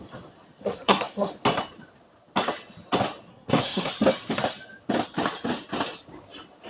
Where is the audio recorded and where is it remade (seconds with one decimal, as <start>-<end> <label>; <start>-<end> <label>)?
0.0-0.6 recorded; 0.6-1.3 remade; 1.3-3.3 recorded; 3.3-3.9 remade; 3.9-6.7 recorded